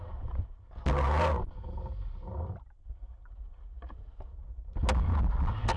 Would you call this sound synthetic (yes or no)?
no